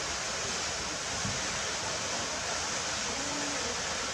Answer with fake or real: real